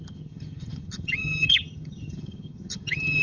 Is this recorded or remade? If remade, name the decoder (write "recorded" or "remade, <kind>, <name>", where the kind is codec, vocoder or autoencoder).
remade, vocoder, HiFi-GAN